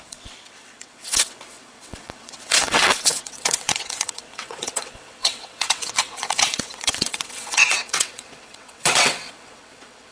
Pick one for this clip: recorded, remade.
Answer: remade